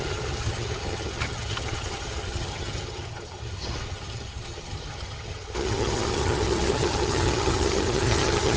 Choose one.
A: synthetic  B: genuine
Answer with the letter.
A